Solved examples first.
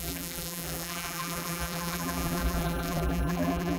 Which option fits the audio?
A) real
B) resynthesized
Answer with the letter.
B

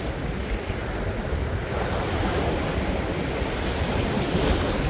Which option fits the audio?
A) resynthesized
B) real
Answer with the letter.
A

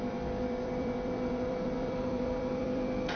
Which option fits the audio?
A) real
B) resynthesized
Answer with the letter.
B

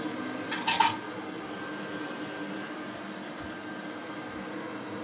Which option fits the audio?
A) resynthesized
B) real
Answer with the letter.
B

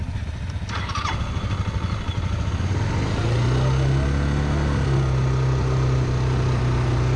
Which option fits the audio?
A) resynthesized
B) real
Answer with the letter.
B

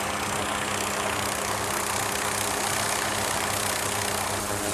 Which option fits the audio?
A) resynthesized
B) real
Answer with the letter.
B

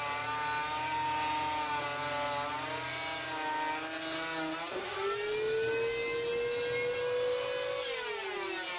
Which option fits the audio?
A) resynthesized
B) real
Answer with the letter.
B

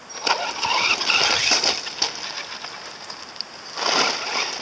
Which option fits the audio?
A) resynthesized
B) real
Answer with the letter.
B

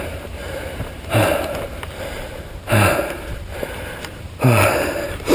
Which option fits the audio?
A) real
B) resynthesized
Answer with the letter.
B